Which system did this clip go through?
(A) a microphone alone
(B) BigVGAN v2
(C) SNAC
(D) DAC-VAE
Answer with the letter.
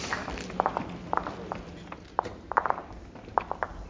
A